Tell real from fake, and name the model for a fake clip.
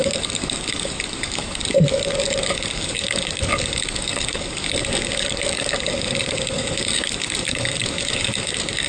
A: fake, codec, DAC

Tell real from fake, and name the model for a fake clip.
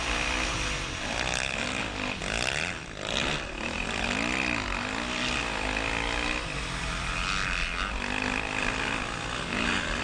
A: real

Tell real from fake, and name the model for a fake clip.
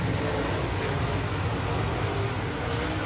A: real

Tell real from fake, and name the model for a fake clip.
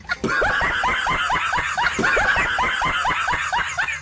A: real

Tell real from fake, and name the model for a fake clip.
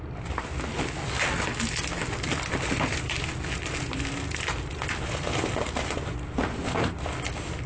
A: real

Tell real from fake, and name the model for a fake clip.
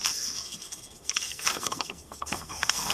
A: fake, codec, SNAC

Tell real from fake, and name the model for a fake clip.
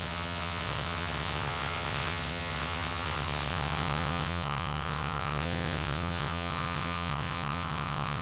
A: fake, vocoder, WaveNeXt